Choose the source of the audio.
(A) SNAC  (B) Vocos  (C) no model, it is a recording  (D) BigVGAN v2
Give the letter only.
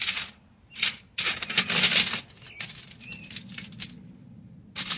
C